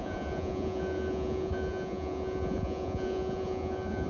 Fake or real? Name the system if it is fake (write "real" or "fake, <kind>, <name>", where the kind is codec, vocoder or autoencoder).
fake, vocoder, Vocos